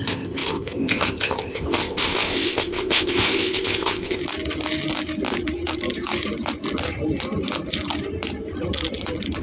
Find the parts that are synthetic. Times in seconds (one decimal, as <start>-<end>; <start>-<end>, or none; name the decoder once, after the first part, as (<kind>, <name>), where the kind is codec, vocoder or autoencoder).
0.0-4.2 (codec, ZipCodec)

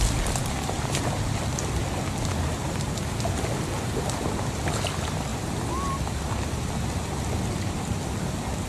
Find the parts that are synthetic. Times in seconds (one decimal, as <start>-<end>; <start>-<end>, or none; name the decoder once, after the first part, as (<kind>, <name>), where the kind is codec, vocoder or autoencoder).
none

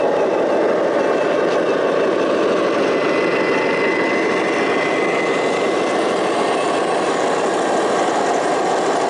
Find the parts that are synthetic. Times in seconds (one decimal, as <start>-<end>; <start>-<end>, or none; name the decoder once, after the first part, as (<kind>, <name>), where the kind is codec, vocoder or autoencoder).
none

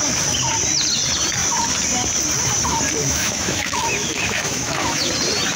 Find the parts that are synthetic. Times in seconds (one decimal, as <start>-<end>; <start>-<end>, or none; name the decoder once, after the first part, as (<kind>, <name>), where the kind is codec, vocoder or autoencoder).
3.0-5.1 (autoencoder, DAC-VAE)

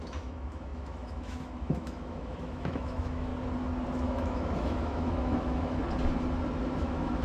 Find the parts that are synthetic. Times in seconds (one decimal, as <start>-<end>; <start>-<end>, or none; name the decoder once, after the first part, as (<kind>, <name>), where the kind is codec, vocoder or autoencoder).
0.0-3.3 (autoencoder, DAC-VAE); 3.9-5.8; 6.8-7.2

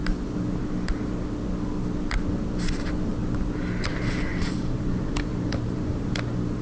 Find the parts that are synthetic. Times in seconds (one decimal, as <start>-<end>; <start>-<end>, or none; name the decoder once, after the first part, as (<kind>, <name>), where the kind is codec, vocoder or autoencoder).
4.3-6.1 (vocoder, BigVGAN v2)

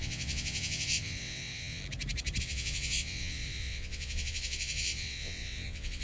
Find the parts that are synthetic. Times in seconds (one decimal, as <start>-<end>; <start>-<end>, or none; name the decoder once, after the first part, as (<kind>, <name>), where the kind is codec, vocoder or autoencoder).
0.0-1.8 (vocoder, WaveNeXt); 2.4-6.0

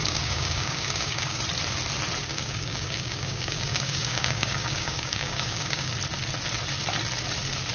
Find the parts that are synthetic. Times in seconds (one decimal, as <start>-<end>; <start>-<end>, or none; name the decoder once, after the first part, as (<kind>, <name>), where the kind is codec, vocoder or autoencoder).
0.0-1.4 (codec, DAC); 2.3-5.9